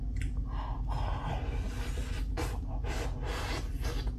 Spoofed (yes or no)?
no